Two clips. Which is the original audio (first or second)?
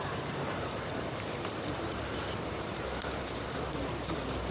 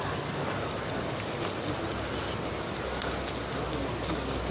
second